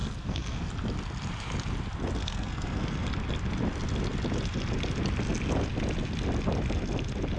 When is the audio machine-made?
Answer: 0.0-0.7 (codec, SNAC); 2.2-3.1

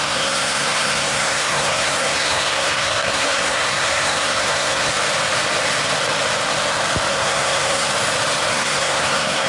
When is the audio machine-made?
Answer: 0.0-4.9 (codec, SNAC); 7.1-7.9; 8.5-9.5